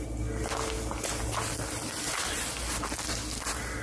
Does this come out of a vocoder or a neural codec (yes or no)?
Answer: no